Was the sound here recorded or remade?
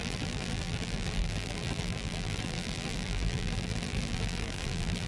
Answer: remade